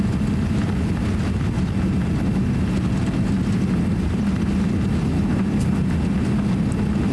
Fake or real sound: real